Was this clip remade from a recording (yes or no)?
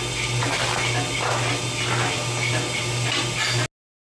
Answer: no